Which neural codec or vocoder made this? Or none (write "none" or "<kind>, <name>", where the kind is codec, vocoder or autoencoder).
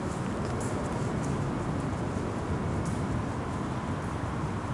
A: none